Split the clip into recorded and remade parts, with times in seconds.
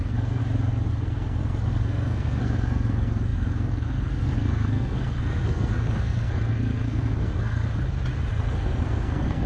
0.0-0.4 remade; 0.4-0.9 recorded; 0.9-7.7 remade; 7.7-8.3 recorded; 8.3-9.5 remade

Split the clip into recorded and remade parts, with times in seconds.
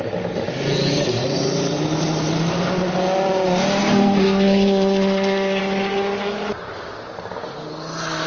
0.0-3.8 recorded; 3.8-5.6 remade; 5.6-8.3 recorded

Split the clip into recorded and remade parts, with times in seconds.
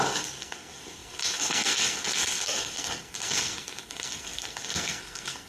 0.0-5.5 remade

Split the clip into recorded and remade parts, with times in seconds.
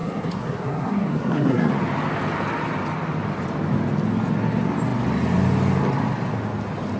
0.0-1.7 remade; 1.7-7.0 recorded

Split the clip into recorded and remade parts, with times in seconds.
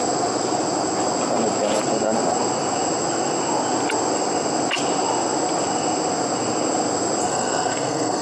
0.0-7.3 recorded; 7.3-8.2 remade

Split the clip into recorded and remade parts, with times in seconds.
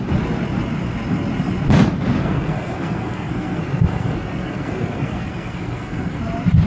0.0-2.2 recorded; 2.2-6.2 remade; 6.2-6.7 recorded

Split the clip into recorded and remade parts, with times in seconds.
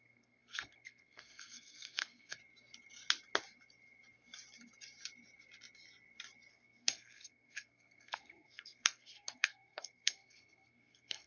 0.0-2.4 remade; 2.4-6.5 recorded; 6.5-11.3 remade